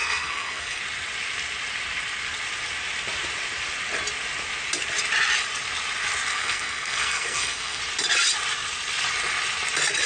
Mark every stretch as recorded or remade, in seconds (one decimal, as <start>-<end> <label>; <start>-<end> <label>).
0.0-0.8 remade; 0.8-6.3 recorded; 6.3-7.8 remade; 7.8-10.1 recorded